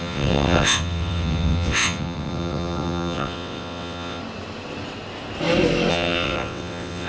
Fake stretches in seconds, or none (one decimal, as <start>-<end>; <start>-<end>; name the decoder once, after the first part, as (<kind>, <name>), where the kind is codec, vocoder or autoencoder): 0.0-4.2 (vocoder, WaveNeXt); 5.9-7.1